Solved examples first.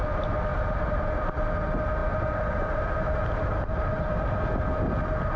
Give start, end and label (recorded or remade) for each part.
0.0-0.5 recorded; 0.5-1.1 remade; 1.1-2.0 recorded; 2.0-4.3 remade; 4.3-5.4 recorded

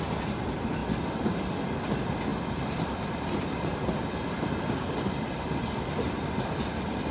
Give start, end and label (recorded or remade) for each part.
0.0-0.8 recorded; 0.8-1.5 remade; 1.5-2.3 recorded; 2.3-6.3 remade; 6.3-7.1 recorded

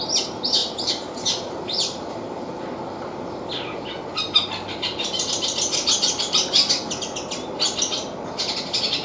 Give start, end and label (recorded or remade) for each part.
0.0-0.6 recorded; 0.6-2.4 remade; 2.4-9.0 recorded

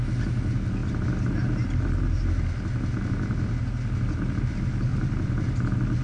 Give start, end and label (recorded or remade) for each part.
0.0-4.9 recorded; 4.9-5.5 remade; 5.5-6.0 recorded

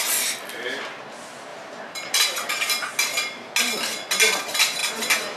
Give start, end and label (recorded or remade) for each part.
0.0-1.5 recorded; 1.5-3.5 remade; 3.5-5.4 recorded

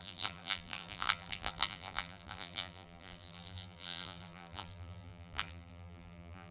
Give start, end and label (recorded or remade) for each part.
0.0-6.5 remade

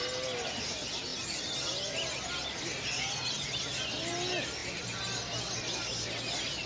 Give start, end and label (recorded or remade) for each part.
0.0-6.7 recorded

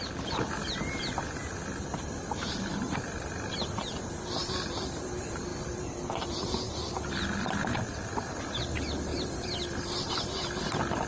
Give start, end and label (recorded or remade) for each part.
0.0-1.6 recorded; 1.6-4.7 remade; 4.7-9.1 recorded; 9.1-10.1 remade; 10.1-11.1 recorded